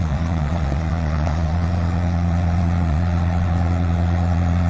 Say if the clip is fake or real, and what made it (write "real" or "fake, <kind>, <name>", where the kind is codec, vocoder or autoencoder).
fake, vocoder, Vocos